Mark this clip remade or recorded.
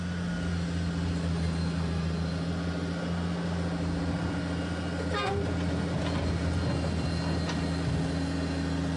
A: recorded